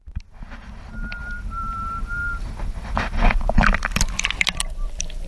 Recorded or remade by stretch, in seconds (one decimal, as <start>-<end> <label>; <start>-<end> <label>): 0.0-5.3 recorded